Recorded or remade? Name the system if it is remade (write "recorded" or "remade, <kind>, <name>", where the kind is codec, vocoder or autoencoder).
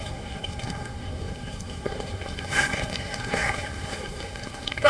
remade, codec, SNAC